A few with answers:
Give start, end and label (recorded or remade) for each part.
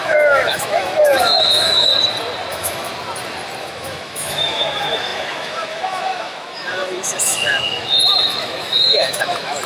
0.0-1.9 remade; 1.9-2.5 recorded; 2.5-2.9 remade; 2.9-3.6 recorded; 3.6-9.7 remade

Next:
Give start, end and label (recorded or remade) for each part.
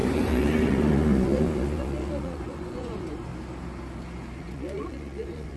0.0-3.3 remade; 3.3-4.4 recorded; 4.4-5.6 remade